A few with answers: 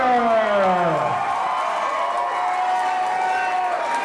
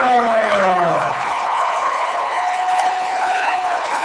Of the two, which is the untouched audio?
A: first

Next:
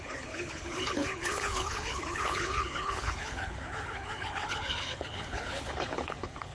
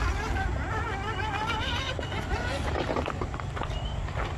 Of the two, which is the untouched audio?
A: second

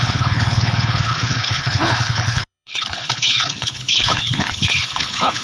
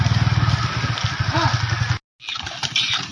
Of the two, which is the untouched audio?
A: second